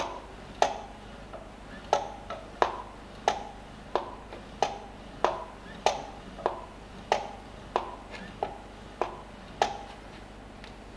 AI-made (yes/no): no